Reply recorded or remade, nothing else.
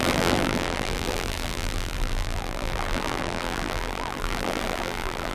remade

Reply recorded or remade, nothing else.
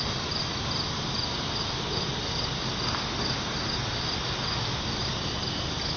recorded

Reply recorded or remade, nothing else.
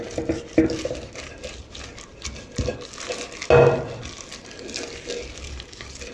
recorded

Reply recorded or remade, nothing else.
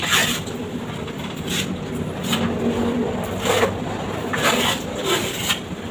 remade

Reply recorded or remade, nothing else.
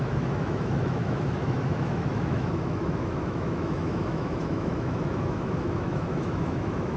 remade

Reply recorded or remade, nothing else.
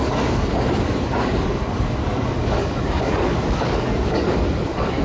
remade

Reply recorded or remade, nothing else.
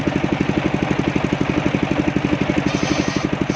recorded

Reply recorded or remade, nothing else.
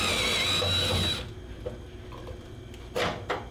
recorded